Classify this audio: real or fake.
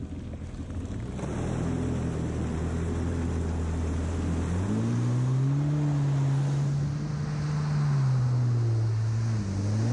real